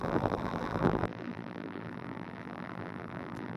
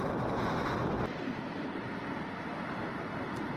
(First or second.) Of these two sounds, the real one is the second